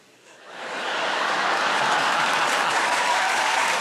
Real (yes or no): no